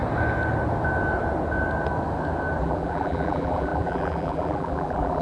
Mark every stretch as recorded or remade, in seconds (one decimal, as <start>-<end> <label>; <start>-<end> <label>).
0.0-2.6 recorded; 2.6-5.2 remade